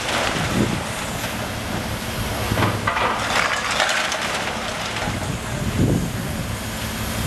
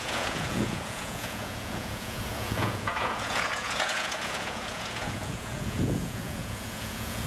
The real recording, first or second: first